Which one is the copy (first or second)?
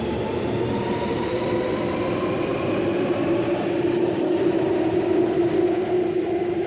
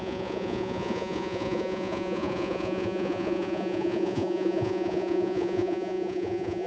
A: second